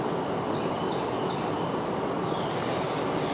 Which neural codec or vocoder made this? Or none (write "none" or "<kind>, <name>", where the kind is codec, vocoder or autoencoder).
none